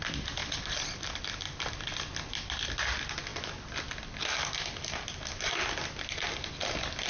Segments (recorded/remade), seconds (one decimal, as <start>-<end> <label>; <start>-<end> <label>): 0.0-7.1 recorded

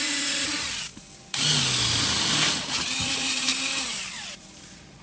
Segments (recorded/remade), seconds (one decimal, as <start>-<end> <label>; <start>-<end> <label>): 0.0-0.9 remade; 0.9-2.5 recorded; 2.5-3.5 remade; 3.5-4.6 recorded; 4.6-5.0 remade

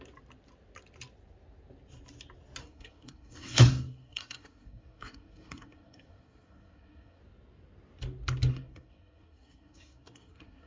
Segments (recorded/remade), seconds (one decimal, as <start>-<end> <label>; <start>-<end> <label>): 0.0-2.6 recorded; 2.6-7.2 remade; 7.2-8.5 recorded; 8.5-10.7 remade

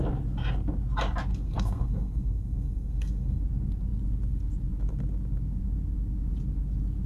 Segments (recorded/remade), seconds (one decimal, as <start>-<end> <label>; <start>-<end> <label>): 0.0-1.3 recorded; 1.3-3.4 remade; 3.4-7.1 recorded

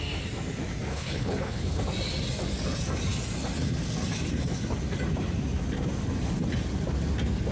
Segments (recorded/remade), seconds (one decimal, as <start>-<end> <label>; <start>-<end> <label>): 0.0-0.9 recorded; 0.9-1.8 remade; 1.8-7.5 recorded

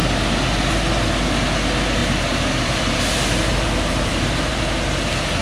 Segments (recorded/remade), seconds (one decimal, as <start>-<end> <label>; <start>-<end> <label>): 0.0-2.0 recorded; 2.0-3.0 remade; 3.0-3.5 recorded; 3.5-4.6 remade; 4.6-5.4 recorded

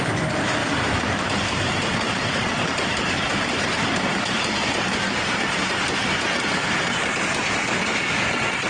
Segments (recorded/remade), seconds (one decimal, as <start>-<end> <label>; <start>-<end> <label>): 0.0-0.6 recorded; 0.6-4.7 remade; 4.7-8.7 recorded